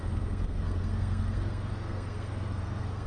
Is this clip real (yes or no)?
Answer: no